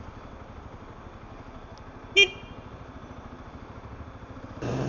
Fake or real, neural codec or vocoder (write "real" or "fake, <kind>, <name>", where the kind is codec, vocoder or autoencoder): real